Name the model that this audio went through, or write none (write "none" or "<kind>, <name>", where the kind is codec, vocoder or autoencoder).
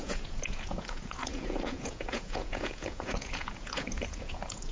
vocoder, Vocos